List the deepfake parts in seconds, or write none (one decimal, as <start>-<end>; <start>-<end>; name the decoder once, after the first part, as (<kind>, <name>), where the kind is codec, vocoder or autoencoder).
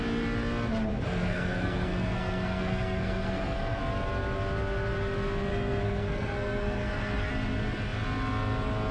0.9-3.8 (codec, SNAC); 5.5-7.3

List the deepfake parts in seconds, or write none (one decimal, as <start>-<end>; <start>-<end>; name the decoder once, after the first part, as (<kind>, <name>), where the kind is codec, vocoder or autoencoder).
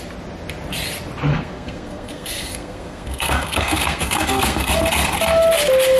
1.3-4.7 (codec, SNAC)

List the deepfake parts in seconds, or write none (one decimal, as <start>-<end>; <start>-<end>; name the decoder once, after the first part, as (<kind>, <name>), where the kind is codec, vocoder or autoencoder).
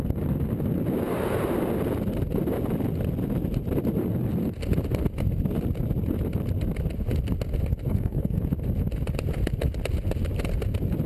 7.9-8.4 (codec, SNAC)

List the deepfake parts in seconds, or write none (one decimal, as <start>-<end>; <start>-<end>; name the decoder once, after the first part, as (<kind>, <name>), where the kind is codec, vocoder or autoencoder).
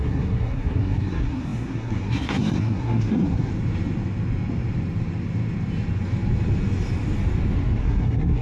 0.0-3.5 (codec, SNAC); 7.8-8.4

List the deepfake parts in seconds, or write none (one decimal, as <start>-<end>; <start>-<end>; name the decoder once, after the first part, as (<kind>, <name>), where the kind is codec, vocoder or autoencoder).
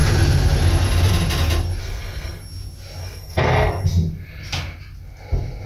1.8-2.4 (codec, SNAC); 3.0-3.8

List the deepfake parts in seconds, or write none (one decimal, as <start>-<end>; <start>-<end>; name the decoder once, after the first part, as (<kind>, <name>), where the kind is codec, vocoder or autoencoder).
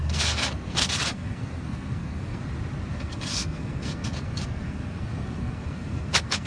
0.0-2.4 (codec, SNAC); 2.9-6.5